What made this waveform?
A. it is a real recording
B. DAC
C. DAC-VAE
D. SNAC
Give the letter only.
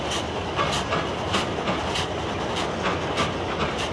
A